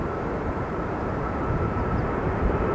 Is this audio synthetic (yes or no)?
yes